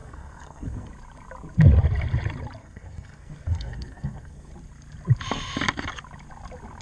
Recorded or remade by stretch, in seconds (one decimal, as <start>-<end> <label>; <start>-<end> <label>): 0.0-0.9 remade; 0.9-2.6 recorded; 2.6-4.5 remade; 4.5-6.8 recorded

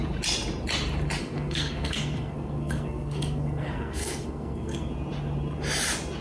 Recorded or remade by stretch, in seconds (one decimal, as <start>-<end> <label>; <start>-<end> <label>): 0.0-1.2 recorded; 1.2-4.9 remade; 4.9-6.2 recorded